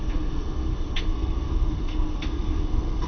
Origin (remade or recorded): remade